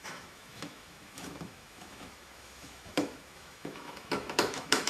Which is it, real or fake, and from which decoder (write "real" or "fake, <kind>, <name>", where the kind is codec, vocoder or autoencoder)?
fake, autoencoder, DAC-VAE